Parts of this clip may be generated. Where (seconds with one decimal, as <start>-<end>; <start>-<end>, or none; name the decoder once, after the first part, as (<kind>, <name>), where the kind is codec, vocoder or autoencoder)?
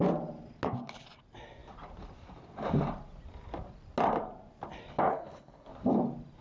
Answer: 5.1-5.7 (codec, HILCodec)